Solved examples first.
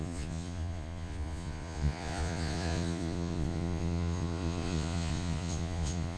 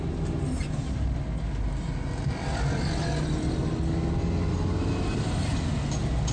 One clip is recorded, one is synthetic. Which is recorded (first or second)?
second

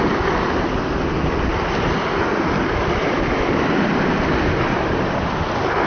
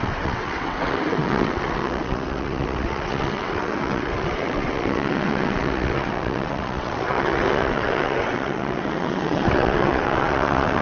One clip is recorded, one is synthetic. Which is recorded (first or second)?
first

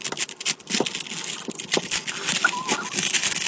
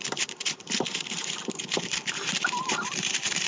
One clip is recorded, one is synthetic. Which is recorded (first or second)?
first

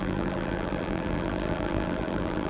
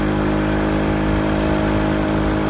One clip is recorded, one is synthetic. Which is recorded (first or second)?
second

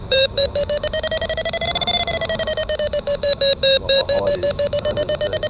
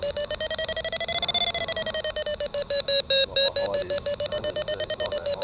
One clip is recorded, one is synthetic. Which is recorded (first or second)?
second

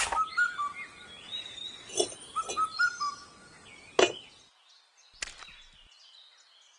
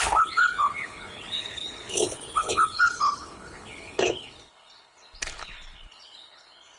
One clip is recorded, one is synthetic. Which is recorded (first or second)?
first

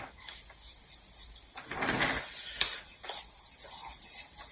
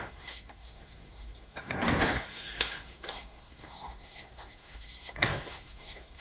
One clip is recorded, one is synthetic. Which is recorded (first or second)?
first